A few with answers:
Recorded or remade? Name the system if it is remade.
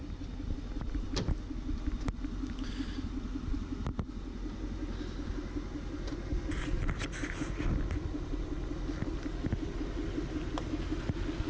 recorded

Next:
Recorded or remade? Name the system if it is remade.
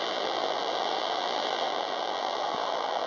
remade, vocoder, BigVGAN v2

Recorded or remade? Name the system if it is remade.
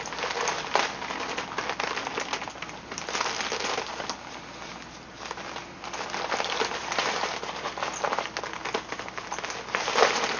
recorded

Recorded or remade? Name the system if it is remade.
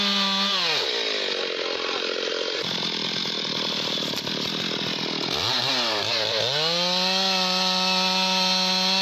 recorded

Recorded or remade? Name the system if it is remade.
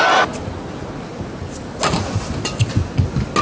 recorded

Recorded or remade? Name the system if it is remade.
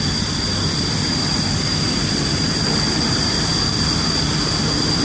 recorded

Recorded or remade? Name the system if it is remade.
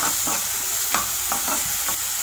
recorded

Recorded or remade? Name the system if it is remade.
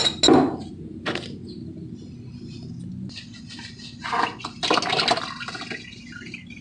recorded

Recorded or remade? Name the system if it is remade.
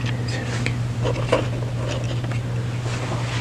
recorded